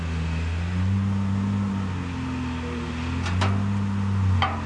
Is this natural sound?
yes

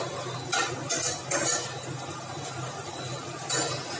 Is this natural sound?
yes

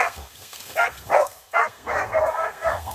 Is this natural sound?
no